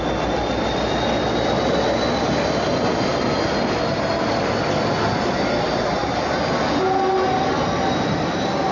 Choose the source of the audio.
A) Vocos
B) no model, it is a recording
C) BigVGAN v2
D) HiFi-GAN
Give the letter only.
B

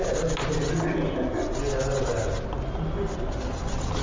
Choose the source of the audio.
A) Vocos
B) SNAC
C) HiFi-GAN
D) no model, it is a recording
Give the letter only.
D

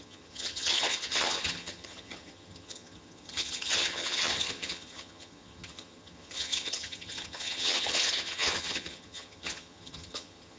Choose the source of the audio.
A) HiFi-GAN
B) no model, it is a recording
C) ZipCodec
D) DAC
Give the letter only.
A